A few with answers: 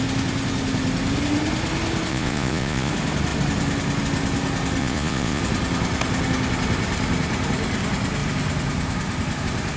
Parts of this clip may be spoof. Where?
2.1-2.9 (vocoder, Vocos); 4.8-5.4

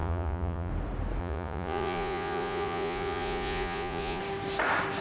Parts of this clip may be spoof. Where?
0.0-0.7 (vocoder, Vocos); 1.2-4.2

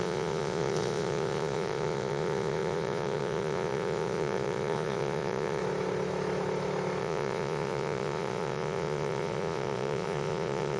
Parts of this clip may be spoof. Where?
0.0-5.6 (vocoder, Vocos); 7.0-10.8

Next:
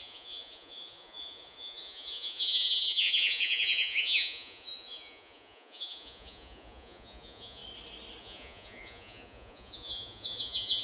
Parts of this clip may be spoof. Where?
0.0-7.6 (vocoder, Vocos); 8.2-10.8

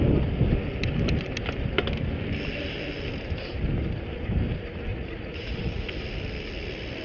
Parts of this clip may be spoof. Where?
4.9-5.9 (vocoder, Vocos)

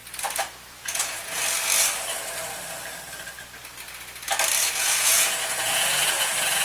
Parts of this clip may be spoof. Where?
0.8-1.4 (vocoder, Vocos); 4.7-6.6